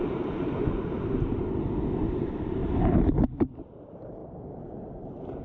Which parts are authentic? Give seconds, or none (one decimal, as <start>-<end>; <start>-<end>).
0.6-2.1; 2.6-3.6; 4.2-4.9